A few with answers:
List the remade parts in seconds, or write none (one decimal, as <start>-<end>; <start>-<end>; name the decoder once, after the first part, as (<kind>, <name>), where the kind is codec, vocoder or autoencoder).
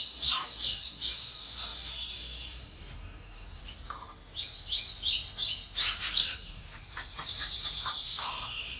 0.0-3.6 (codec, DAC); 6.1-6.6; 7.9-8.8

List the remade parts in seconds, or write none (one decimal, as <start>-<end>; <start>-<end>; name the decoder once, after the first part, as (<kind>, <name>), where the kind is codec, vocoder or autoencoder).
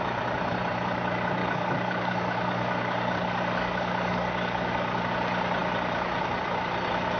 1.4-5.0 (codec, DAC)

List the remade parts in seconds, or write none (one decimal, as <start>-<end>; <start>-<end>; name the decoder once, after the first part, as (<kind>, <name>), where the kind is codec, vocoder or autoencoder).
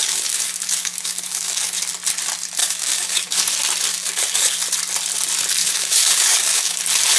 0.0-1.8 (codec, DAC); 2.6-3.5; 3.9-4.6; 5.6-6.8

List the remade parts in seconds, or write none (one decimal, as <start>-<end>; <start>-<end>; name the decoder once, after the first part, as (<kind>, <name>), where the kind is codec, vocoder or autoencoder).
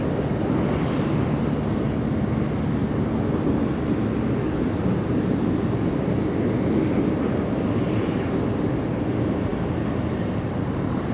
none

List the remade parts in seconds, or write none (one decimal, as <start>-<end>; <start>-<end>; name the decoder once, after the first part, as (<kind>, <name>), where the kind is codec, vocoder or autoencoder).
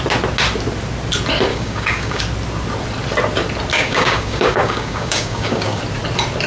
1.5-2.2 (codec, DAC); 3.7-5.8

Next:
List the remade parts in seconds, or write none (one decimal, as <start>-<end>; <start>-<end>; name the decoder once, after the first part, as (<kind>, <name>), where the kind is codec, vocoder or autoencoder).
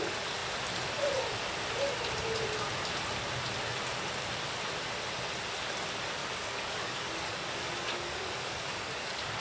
6.2-9.4 (codec, DAC)